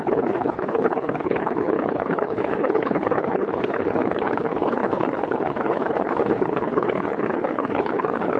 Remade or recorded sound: remade